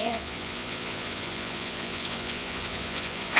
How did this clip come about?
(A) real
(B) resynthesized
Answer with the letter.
B